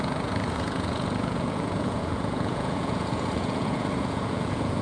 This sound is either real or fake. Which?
fake